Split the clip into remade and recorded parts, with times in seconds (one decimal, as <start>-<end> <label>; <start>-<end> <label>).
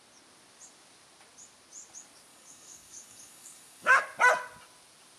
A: 0.0-2.3 recorded; 2.3-4.0 remade; 4.0-5.2 recorded